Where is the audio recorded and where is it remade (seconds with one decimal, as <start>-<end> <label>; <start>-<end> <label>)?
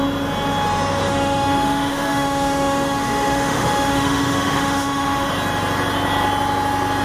0.0-1.1 recorded; 1.1-5.3 remade; 5.3-7.0 recorded